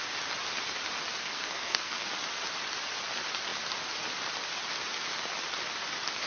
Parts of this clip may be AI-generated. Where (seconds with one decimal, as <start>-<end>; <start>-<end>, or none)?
1.1-2.1